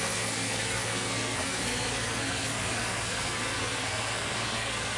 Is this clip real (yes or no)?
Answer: no